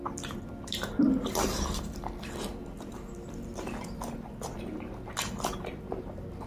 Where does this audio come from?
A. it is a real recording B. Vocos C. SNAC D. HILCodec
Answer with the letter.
A